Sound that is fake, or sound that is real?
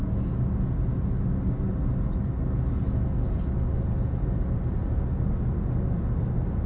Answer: real